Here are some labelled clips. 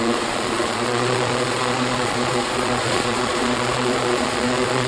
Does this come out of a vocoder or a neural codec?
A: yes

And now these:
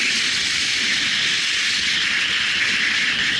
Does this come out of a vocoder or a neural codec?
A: no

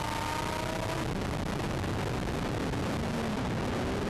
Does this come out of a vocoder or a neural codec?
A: no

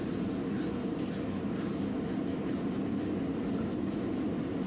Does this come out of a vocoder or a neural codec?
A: no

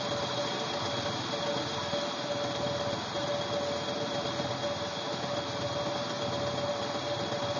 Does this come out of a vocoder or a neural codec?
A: no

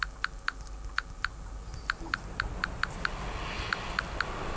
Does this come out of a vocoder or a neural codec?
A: no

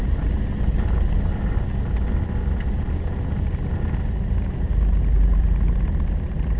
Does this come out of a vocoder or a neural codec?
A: no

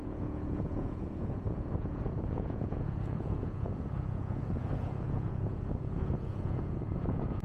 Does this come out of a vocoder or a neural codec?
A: yes